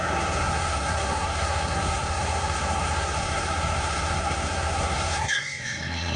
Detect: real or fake fake